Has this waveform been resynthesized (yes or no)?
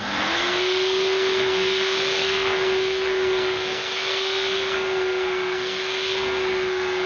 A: yes